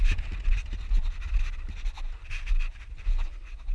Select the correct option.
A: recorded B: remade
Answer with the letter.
A